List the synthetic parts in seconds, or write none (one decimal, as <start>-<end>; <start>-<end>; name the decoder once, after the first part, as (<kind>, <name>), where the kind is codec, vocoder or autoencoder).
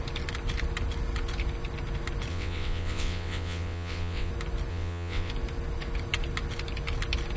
2.3-4.3 (vocoder, WaveNeXt); 4.7-5.3